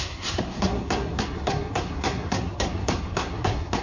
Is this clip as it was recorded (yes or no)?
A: no